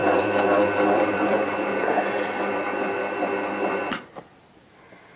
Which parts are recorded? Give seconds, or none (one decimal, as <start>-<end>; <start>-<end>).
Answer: 3.8-4.6